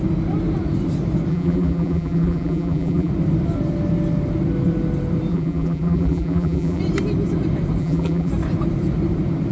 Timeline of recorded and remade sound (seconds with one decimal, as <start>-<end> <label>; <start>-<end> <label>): 0.0-1.3 recorded; 1.3-3.1 remade; 3.1-5.3 recorded; 5.3-6.8 remade; 6.8-7.8 recorded; 7.8-8.3 remade; 8.3-9.5 recorded